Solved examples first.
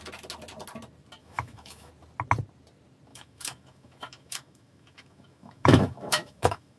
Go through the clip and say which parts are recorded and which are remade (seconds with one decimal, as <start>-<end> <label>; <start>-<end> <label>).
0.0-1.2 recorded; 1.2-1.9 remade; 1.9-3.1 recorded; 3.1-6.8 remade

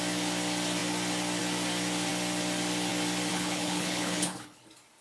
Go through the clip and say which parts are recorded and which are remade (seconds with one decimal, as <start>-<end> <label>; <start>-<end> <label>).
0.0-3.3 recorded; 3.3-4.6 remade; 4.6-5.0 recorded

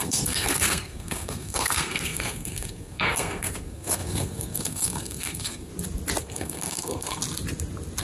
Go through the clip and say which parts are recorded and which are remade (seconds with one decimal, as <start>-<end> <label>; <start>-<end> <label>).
0.0-5.7 remade; 5.7-6.2 recorded; 6.2-7.2 remade; 7.2-8.0 recorded